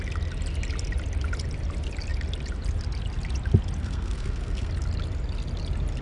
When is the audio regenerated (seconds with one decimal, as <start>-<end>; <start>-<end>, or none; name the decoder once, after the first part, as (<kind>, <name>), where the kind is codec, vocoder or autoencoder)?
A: 3.8-4.7 (codec, SNAC)